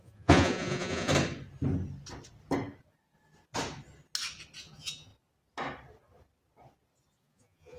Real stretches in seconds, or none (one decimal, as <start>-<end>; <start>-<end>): 1.1-4.6; 5.1-7.2